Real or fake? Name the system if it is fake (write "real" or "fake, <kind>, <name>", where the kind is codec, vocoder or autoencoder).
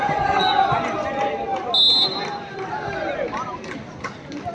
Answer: real